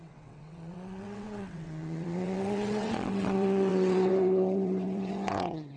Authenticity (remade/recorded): remade